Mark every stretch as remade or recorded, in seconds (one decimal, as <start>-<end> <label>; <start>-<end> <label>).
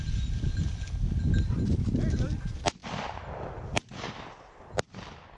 0.0-5.4 recorded